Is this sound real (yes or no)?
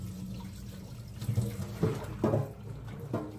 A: yes